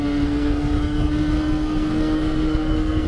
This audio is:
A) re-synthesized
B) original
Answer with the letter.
A